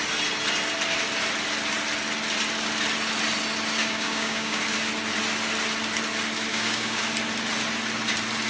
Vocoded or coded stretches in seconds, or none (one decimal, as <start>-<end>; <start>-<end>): 3.8-4.6; 6.5-7.0